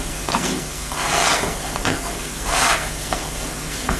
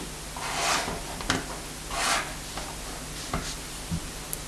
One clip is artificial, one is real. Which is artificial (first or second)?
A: first